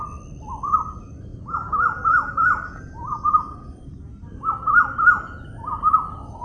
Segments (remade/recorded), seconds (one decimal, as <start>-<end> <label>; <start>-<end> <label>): 0.0-6.4 recorded